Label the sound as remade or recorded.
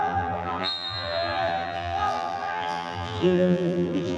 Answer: remade